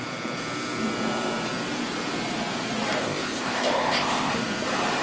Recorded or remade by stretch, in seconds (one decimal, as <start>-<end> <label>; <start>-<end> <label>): 0.0-3.0 recorded; 3.0-4.3 remade; 4.3-5.0 recorded